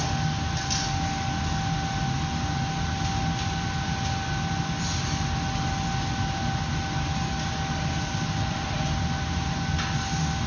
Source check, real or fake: real